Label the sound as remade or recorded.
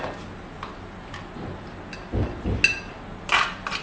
recorded